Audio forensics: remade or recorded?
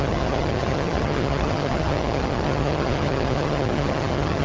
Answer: remade